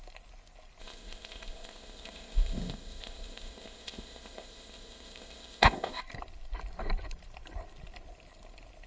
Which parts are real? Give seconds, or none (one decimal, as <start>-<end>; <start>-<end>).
0.0-0.8; 6.0-8.9